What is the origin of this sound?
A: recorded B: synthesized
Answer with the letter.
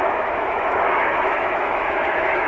B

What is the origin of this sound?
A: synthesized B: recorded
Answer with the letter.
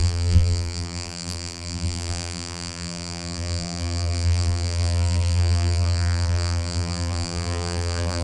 A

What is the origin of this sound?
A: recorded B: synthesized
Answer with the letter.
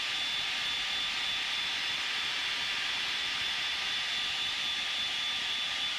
A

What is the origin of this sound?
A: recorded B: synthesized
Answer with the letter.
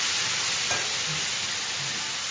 A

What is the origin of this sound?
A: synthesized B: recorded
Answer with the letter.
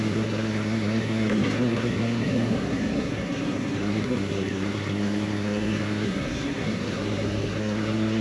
A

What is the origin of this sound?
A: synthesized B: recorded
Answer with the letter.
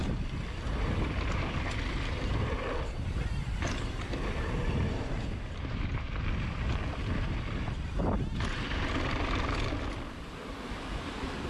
B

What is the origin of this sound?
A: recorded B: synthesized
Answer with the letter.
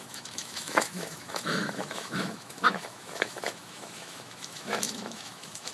B